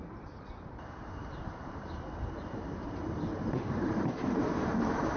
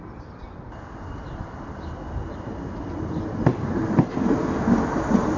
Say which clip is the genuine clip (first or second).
second